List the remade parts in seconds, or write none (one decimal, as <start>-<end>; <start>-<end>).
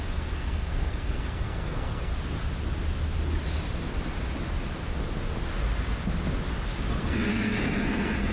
0.0-2.1; 6.9-8.3